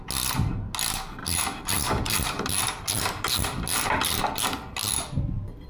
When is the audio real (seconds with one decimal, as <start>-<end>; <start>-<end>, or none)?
0.0-1.2; 4.2-4.8